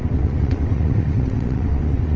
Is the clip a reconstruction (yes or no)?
yes